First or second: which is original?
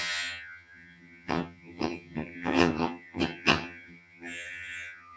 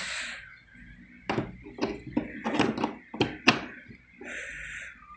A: second